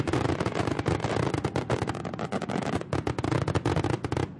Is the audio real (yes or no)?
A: yes